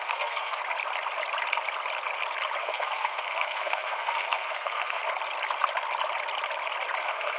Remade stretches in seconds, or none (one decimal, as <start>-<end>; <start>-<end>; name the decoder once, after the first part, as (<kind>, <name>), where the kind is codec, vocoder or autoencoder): 0.0-0.6 (codec, SNAC); 2.6-5.0; 7.0-7.4